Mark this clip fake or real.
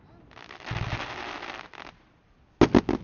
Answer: real